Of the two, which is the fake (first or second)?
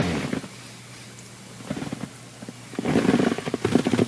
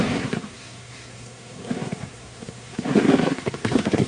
second